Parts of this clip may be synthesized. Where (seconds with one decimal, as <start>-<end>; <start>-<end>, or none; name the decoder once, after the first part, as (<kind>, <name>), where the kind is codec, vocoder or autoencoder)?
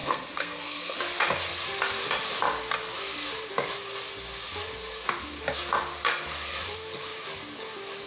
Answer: 0.0-1.0 (codec, SNAC)